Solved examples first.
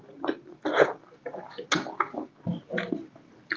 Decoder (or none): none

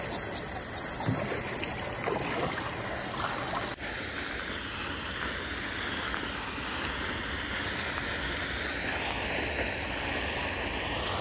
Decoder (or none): none